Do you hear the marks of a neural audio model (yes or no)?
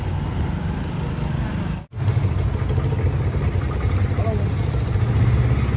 no